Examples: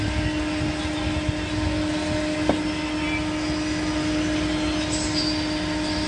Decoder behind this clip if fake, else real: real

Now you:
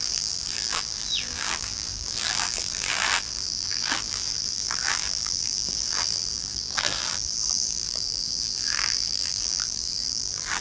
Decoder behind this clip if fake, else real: fake, vocoder, BigVGAN v2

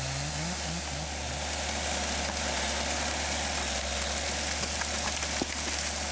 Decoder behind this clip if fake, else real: real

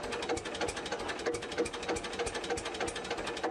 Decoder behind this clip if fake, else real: real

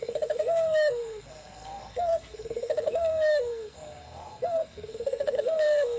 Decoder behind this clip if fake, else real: fake, codec, SNAC